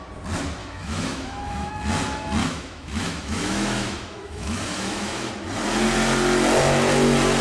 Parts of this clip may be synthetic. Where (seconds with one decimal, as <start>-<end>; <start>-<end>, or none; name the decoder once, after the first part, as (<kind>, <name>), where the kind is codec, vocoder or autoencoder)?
0.6-1.7 (autoencoder, DAC-VAE); 2.4-5.3